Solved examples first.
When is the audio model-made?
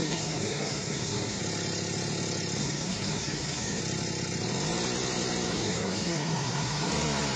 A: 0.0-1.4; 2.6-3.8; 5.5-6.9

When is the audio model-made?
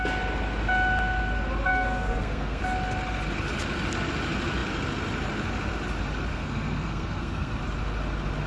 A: 1.7-2.6; 6.3-7.6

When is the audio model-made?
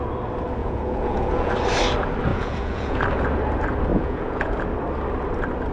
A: 0.6-1.5; 2.3-3.0; 3.9-4.6